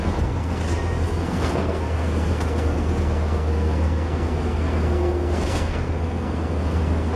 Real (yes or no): no